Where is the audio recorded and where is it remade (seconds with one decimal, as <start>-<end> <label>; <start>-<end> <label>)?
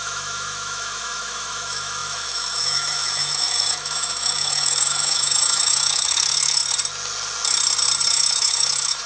0.0-6.6 remade; 6.6-8.1 recorded; 8.1-9.1 remade